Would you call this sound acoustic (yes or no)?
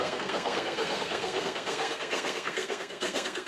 no